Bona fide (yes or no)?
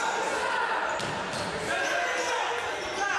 yes